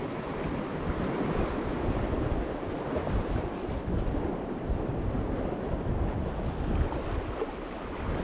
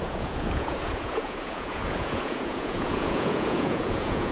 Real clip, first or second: first